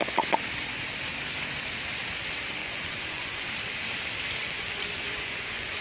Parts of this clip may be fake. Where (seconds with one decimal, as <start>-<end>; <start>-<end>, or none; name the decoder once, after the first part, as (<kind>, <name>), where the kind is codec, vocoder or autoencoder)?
2.6-3.5 (vocoder, Vocos); 4.4-5.8